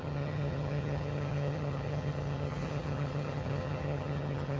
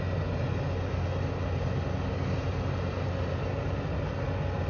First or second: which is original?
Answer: second